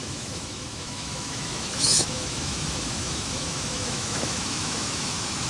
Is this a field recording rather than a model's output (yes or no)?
no